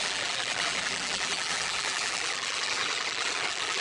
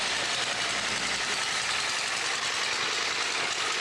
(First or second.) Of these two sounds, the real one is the second